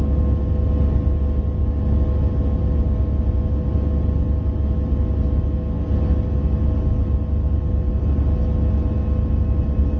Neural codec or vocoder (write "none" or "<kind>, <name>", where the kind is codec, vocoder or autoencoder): none